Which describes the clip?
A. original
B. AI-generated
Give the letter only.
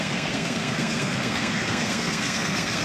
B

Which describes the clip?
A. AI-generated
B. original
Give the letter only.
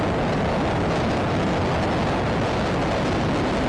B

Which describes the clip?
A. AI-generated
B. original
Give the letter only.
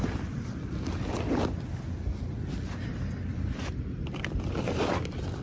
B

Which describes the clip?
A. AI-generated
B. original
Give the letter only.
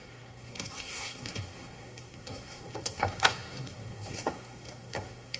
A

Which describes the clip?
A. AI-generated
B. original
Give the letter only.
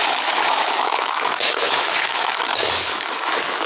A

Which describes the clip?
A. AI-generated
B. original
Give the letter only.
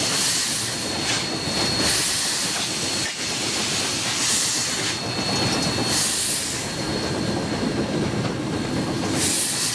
B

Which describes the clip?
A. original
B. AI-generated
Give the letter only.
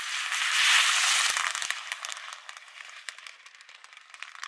A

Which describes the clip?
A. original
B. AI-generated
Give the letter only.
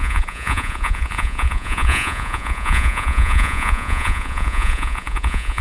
B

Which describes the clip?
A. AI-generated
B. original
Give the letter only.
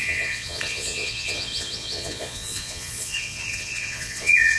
A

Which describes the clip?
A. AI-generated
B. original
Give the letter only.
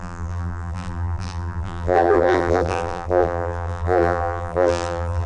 A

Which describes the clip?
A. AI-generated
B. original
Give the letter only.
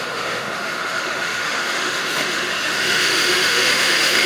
A